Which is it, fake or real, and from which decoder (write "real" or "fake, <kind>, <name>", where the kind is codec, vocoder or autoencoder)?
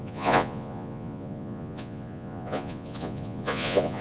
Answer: fake, vocoder, Vocos